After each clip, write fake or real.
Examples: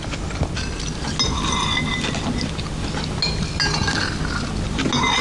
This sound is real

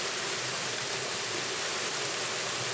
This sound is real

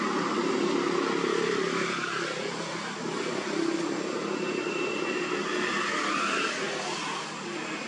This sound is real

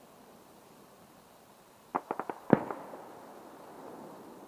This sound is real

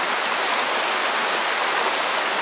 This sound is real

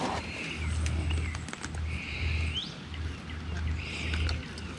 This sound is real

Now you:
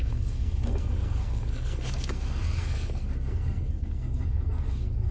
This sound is fake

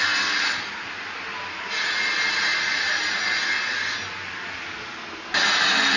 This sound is real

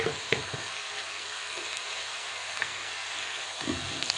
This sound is fake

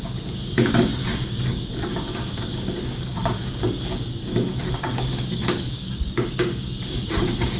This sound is fake